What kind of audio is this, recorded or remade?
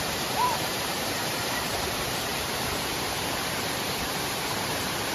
remade